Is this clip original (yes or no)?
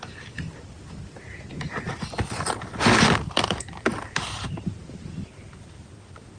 yes